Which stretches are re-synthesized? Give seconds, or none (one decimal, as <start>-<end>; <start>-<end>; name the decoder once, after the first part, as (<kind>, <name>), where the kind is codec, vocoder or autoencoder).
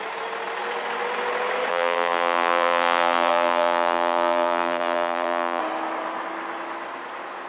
1.7-5.6 (vocoder, BigVGAN v2)